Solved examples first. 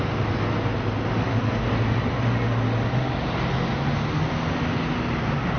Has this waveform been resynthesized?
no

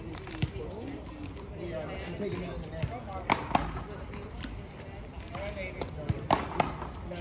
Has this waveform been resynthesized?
no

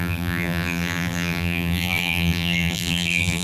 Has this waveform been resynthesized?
yes